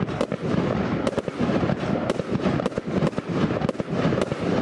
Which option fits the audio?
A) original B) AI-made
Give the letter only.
A